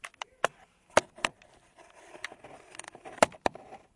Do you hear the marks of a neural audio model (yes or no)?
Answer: no